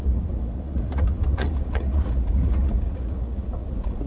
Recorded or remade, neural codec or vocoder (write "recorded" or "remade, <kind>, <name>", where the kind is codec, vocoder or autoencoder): remade, vocoder, Vocos